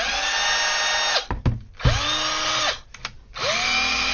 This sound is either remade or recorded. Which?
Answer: recorded